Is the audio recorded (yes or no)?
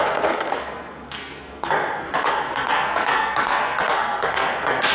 no